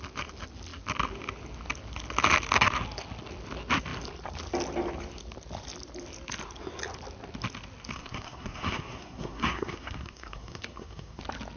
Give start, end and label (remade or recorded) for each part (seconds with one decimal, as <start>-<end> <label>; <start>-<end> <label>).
0.0-7.9 recorded; 7.9-11.2 remade; 11.2-11.6 recorded